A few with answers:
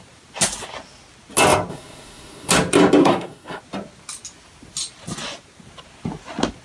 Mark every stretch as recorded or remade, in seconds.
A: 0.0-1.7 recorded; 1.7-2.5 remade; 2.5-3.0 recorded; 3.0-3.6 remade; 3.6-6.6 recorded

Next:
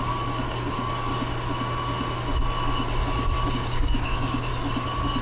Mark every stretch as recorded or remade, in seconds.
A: 0.0-1.1 remade; 1.1-3.5 recorded; 3.5-4.5 remade; 4.5-5.2 recorded

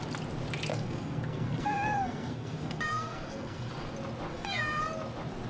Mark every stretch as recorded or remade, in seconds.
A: 0.0-0.7 recorded; 0.7-3.7 remade; 3.7-4.3 recorded; 4.3-4.8 remade; 4.8-5.5 recorded

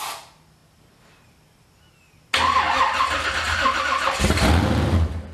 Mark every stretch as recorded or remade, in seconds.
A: 0.0-5.3 recorded

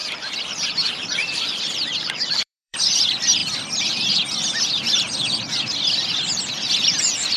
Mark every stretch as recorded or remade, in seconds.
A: 0.0-2.8 remade; 2.8-7.4 recorded

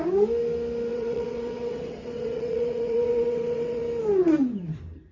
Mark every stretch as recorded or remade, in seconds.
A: 0.0-0.9 recorded; 0.9-3.8 remade; 3.8-5.1 recorded